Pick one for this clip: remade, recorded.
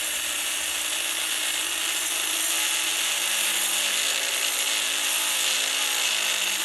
recorded